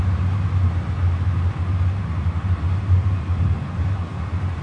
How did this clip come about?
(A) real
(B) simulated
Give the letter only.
A